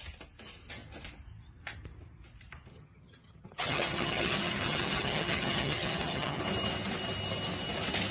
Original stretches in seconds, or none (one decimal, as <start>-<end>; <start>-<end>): 0.0-2.7; 6.4-8.1